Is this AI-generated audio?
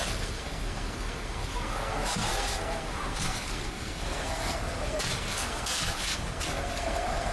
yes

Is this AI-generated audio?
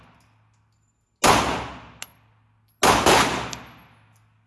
no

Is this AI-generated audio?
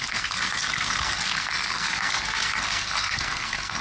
yes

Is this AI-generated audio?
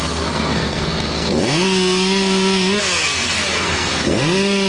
yes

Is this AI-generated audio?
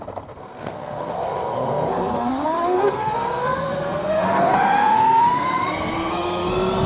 yes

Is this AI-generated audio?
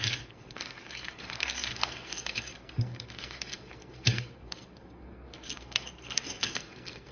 yes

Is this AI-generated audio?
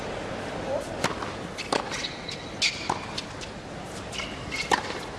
no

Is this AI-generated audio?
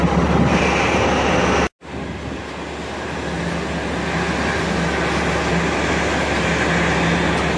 no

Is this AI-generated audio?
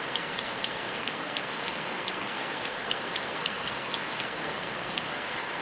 yes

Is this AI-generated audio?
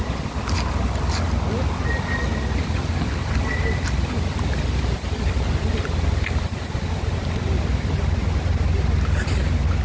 no